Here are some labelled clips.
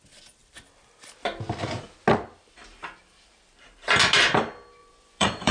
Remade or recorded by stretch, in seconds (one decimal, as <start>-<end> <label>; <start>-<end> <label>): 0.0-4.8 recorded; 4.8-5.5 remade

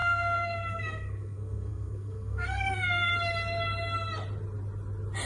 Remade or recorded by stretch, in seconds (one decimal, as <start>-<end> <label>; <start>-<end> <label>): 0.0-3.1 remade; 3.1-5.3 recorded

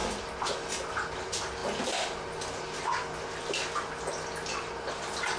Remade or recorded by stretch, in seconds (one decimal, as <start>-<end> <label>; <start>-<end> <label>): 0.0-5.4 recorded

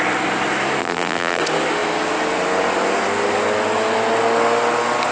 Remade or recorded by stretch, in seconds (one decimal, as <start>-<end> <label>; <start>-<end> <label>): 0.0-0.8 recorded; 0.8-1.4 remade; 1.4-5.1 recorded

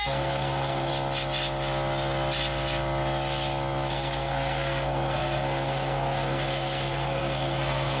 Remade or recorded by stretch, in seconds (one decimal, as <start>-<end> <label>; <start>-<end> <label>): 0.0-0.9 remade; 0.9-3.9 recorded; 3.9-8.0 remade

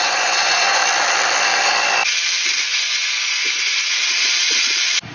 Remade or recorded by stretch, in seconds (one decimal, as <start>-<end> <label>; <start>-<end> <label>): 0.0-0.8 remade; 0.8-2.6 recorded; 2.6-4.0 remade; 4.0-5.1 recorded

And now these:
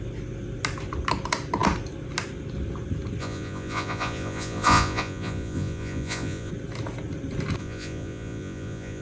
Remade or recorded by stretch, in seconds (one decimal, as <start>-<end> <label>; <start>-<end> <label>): 0.0-3.2 recorded; 3.2-6.5 remade; 6.5-7.6 recorded; 7.6-9.0 remade